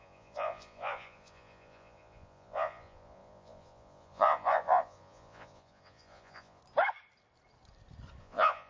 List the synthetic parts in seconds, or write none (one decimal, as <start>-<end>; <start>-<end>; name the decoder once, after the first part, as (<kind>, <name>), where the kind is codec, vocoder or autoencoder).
0.0-6.6 (vocoder, Vocos); 8.2-8.7